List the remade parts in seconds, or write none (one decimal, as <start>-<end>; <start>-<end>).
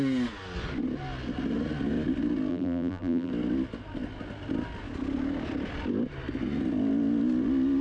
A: 2.5-3.3